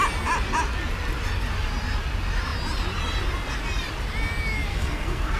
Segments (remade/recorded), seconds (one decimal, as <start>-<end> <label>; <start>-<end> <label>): 0.0-4.7 recorded; 4.7-5.4 remade